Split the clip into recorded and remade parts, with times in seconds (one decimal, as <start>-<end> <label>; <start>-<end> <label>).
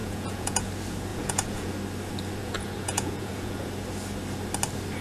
0.0-0.7 remade; 0.7-1.1 recorded; 1.1-1.7 remade; 1.7-2.4 recorded; 2.4-3.6 remade; 3.6-5.0 recorded